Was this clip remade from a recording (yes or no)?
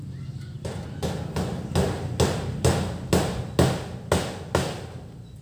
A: no